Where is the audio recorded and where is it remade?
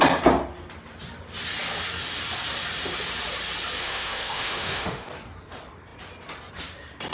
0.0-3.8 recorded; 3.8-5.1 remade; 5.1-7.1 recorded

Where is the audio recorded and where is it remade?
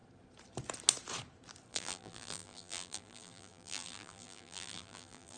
0.0-1.7 recorded; 1.7-5.4 remade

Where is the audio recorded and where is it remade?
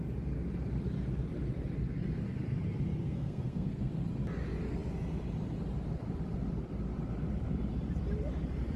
0.0-3.0 recorded; 3.0-3.9 remade; 3.9-8.8 recorded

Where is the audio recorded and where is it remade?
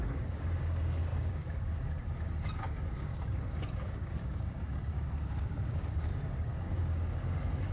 0.0-7.7 remade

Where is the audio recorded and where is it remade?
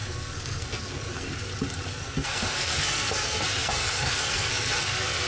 0.0-1.5 remade; 1.5-1.9 recorded; 1.9-5.3 remade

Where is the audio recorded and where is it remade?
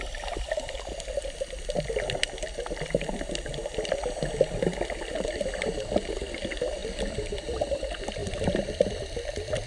0.0-9.7 recorded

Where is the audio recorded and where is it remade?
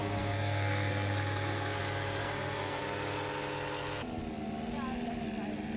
0.0-1.8 remade; 1.8-2.2 recorded; 2.2-2.8 remade; 2.8-5.8 recorded